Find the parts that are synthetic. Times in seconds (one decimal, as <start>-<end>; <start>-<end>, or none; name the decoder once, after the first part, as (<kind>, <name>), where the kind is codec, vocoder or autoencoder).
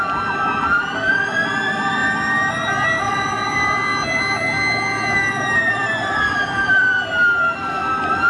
0.0-2.0 (vocoder, BigVGAN v2); 3.0-3.9; 5.6-8.3